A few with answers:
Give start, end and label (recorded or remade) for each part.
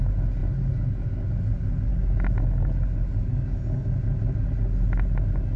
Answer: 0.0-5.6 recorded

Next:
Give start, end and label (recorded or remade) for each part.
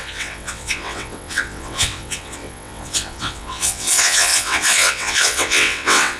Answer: 0.0-6.2 remade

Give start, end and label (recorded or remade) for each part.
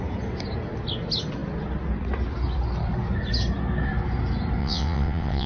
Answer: 0.0-4.6 recorded; 4.6-5.5 remade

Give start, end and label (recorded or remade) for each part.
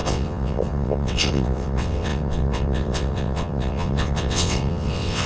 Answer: 0.0-5.3 remade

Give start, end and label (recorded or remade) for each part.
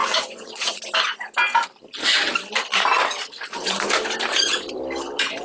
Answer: 0.0-0.8 remade; 0.8-5.4 recorded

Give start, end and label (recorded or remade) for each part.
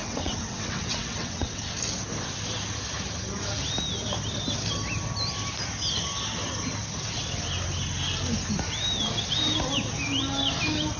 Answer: 0.0-1.7 remade; 1.7-11.0 recorded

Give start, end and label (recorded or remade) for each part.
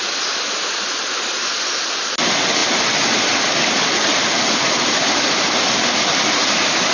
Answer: 0.0-6.9 recorded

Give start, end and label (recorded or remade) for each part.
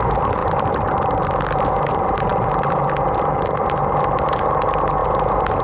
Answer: 0.0-5.6 recorded